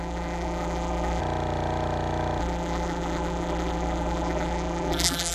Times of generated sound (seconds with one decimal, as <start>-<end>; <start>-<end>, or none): 0.0-1.2; 2.4-5.3